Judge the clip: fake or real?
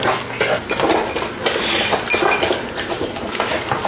real